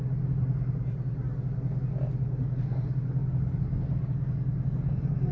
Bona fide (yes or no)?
yes